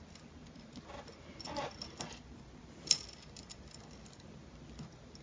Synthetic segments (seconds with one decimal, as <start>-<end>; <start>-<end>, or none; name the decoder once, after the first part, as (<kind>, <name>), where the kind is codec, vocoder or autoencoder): none